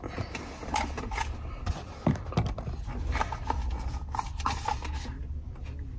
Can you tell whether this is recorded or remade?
recorded